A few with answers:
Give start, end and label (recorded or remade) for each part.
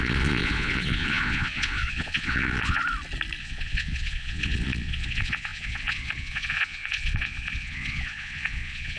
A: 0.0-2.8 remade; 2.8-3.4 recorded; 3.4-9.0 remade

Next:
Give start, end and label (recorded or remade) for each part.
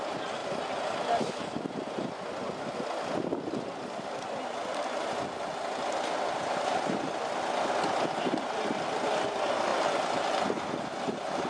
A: 0.0-11.5 recorded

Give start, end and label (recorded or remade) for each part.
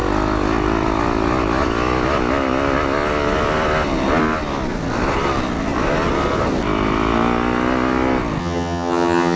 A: 0.0-8.4 recorded; 8.4-9.4 remade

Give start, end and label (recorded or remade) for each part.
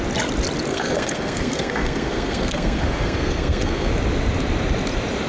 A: 0.0-0.7 recorded; 0.7-3.9 remade; 3.9-5.3 recorded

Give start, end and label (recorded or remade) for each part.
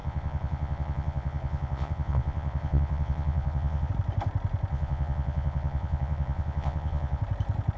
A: 0.0-3.9 remade; 3.9-4.7 recorded; 4.7-7.2 remade; 7.2-7.8 recorded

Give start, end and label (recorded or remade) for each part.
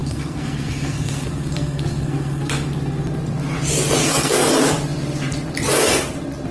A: 0.0-2.7 remade; 2.7-4.0 recorded; 4.0-4.5 remade; 4.5-6.5 recorded